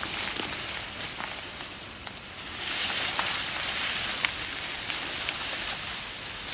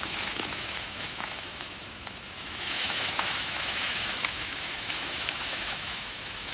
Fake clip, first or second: second